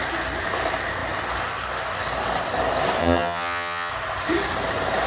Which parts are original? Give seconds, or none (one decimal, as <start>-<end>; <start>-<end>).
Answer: 0.0-3.0; 3.9-5.1